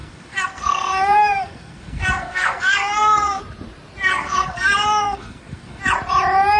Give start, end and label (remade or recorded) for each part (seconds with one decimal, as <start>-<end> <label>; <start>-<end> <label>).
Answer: 0.0-3.4 remade; 3.4-4.1 recorded; 4.1-5.8 remade; 5.8-6.6 recorded